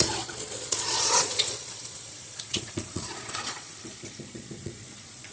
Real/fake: fake